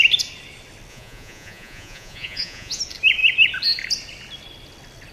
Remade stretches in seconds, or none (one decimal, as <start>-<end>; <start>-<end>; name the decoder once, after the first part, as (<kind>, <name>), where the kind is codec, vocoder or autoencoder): 0.9-2.8 (vocoder, Vocos)